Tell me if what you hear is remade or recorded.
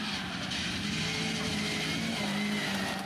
recorded